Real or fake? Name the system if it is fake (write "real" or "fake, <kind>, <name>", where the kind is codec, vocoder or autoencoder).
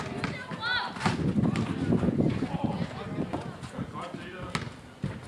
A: real